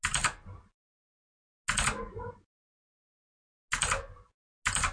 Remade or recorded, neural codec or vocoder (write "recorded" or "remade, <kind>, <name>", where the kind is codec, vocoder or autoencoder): recorded